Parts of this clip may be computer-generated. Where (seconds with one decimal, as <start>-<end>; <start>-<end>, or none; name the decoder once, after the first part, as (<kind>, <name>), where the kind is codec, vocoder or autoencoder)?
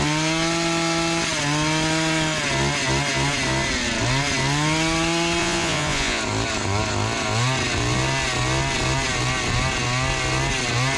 5.4-6.2 (vocoder, Vocos)